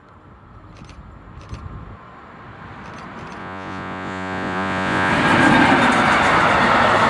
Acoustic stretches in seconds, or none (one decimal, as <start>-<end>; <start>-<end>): 0.0-3.4; 5.1-7.1